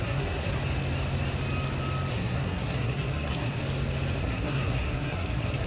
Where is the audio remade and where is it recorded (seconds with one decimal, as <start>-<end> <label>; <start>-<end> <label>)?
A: 0.0-0.6 remade; 0.6-2.1 recorded; 2.1-3.6 remade; 3.6-4.2 recorded; 4.2-5.7 remade